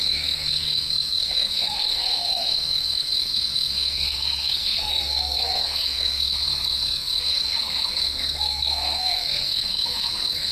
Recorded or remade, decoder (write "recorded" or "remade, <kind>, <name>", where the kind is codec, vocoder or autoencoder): remade, codec, SNAC